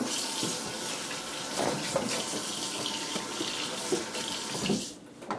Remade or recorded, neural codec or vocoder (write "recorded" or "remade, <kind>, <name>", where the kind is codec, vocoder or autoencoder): recorded